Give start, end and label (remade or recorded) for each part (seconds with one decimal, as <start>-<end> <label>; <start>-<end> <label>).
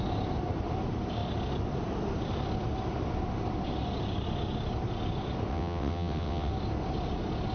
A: 0.0-5.5 recorded; 5.5-6.5 remade; 6.5-7.5 recorded